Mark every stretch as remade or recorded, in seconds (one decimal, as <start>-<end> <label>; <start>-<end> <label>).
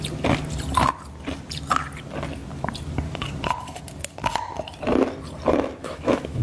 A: 0.0-5.8 recorded; 5.8-6.4 remade